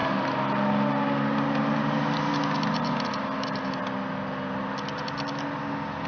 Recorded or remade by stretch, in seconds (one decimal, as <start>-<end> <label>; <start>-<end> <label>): 0.0-6.1 recorded